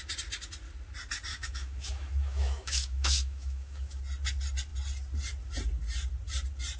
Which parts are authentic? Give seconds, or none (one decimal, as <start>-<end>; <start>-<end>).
0.0-1.3; 4.0-6.8